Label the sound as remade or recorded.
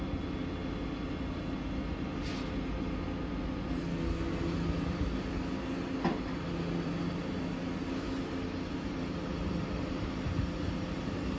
recorded